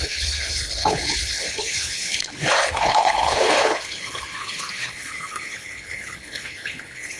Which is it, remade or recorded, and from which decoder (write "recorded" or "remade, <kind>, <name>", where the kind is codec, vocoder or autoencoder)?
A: remade, codec, HILCodec